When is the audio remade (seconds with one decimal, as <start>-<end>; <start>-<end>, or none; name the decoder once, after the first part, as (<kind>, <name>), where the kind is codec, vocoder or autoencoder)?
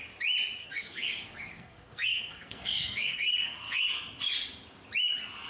0.6-3.9 (codec, SNAC)